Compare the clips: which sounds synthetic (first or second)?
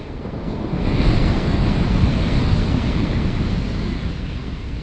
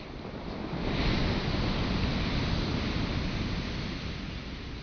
first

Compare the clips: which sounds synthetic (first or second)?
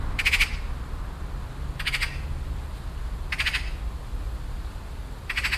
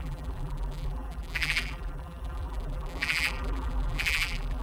second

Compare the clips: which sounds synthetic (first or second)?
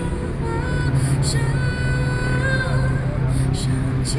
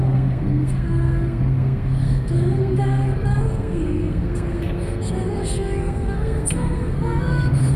second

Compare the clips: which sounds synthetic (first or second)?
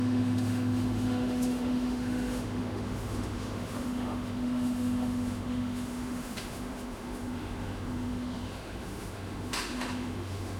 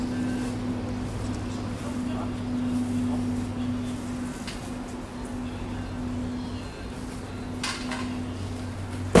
first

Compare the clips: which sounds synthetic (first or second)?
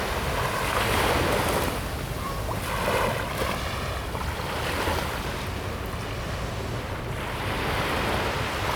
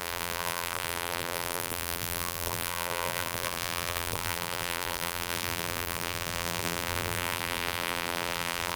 second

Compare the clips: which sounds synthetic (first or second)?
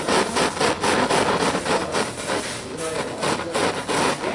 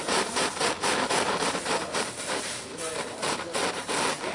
second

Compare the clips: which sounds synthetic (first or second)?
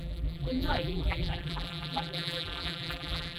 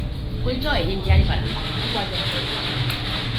first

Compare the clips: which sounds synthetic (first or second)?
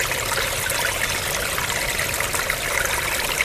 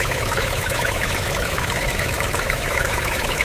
second